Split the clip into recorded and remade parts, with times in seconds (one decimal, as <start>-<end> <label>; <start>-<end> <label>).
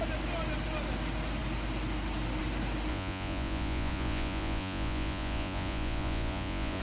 0.0-2.9 recorded; 2.9-6.8 remade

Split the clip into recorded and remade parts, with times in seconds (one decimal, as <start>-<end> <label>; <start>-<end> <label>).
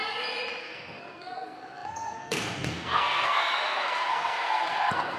0.0-0.6 recorded; 0.6-5.2 remade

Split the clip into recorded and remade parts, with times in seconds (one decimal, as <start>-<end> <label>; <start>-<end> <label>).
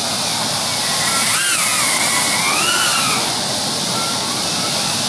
0.0-2.9 recorded; 2.9-3.6 remade; 3.6-5.1 recorded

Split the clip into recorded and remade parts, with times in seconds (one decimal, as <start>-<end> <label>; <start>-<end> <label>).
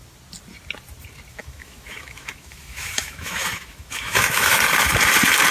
0.0-1.3 recorded; 1.3-4.6 remade; 4.6-5.5 recorded